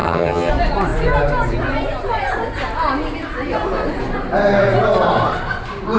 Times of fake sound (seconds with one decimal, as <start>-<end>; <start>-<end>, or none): 0.0-0.5